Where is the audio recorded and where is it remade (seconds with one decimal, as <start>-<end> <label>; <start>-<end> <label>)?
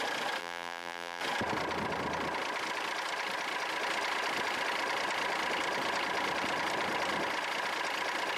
0.0-0.4 recorded; 0.4-1.2 remade; 1.2-8.4 recorded